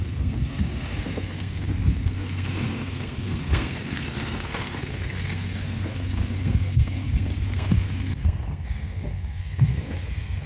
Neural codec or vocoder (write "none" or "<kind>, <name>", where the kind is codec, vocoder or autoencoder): codec, SNAC